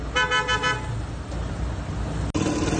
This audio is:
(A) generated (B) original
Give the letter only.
B